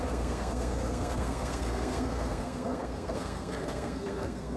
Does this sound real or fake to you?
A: fake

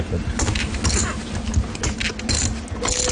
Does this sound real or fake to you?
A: real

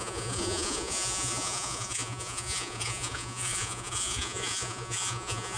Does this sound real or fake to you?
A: fake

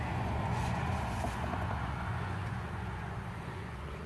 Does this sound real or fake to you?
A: fake